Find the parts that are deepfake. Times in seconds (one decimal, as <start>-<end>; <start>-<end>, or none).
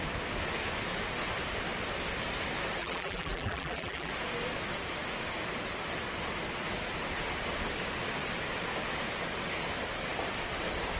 2.8-4.1